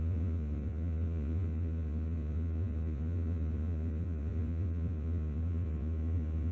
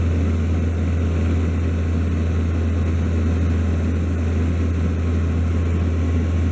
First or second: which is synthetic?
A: first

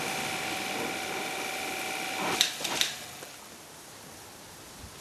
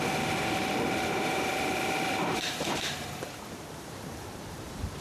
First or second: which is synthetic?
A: second